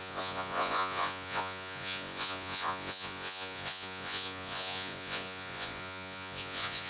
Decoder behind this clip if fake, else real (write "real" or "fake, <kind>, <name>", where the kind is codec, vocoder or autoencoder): fake, vocoder, Vocos